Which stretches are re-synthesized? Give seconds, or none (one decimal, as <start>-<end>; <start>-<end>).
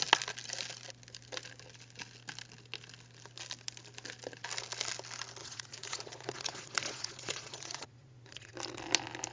5.4-8.5